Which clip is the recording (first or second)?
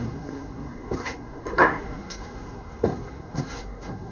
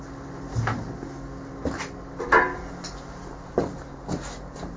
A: second